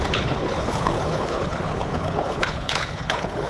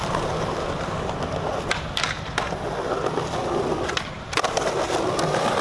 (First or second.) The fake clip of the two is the first